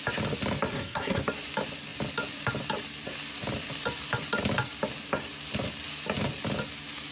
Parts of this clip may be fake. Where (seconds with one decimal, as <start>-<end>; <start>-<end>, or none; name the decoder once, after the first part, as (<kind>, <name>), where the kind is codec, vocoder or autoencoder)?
0.7-1.2 (codec, SNAC)